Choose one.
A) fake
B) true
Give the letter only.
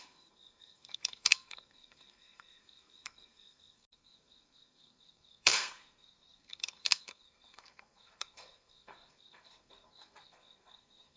A